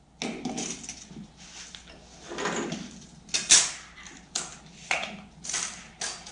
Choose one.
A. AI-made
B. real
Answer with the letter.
B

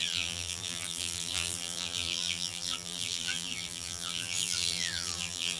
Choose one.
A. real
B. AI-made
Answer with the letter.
B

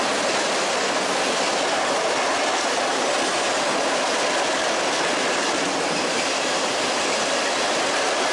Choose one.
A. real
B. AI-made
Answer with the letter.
A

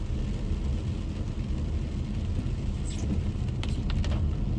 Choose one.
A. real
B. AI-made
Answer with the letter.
A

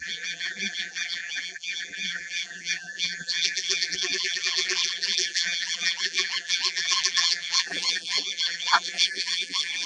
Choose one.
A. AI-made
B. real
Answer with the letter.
A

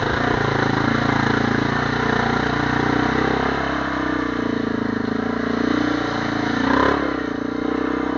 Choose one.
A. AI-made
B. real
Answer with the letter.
B